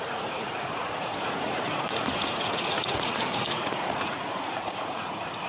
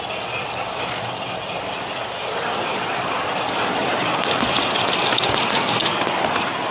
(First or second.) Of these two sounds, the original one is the second